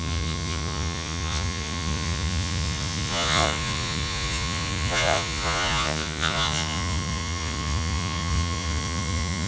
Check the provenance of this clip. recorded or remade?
remade